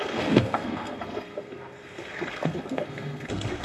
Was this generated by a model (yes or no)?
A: yes